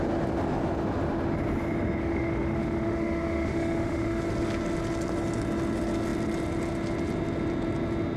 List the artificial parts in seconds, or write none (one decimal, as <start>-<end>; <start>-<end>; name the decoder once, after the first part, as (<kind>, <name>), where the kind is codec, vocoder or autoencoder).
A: 2.0-4.2 (autoencoder, DAC-VAE)